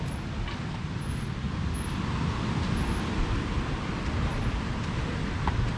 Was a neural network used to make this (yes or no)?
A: no